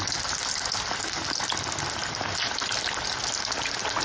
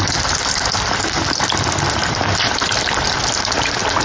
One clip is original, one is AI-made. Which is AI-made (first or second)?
second